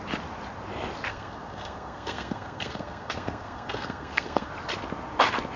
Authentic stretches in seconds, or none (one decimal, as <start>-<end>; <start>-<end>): 0.0-1.1; 4.5-5.6